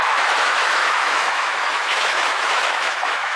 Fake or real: fake